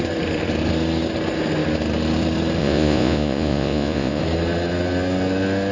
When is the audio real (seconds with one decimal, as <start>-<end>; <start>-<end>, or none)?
0.0-2.6; 4.2-5.7